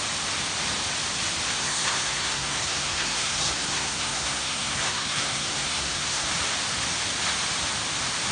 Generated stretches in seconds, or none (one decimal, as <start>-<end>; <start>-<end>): 1.6-6.3